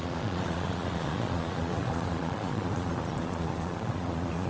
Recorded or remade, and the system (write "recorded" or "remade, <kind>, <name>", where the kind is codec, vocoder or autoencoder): remade, vocoder, Vocos